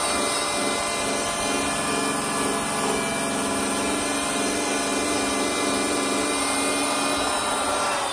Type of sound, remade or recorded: recorded